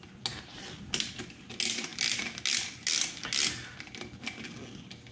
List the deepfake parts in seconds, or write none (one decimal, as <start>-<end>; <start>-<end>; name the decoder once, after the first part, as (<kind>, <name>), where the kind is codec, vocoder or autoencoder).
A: 0.5-1.1 (vocoder, BigVGAN v2)